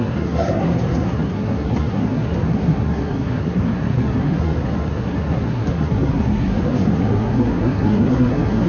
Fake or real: fake